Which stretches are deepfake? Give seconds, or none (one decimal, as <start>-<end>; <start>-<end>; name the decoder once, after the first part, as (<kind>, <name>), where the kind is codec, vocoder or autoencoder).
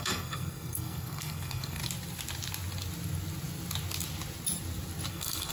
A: 0.0-1.8 (codec, SNAC); 5.1-5.5